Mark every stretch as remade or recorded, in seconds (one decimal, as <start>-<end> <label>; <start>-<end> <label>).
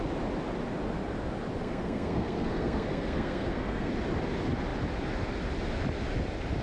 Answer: 0.0-1.6 recorded; 1.6-3.9 remade; 3.9-6.6 recorded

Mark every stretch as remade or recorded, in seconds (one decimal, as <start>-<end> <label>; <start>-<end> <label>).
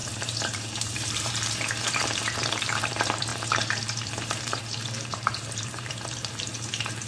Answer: 0.0-7.1 remade